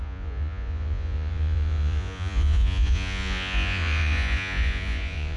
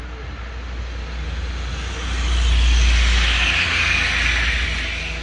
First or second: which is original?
second